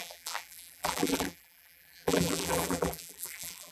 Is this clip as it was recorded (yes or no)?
no